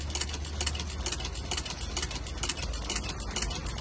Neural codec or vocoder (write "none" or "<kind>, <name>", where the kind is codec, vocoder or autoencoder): none